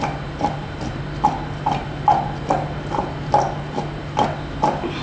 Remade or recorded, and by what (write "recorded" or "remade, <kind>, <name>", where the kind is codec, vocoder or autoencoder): recorded